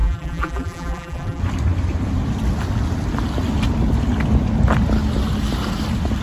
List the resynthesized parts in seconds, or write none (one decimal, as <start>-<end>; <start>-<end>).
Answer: 0.0-1.4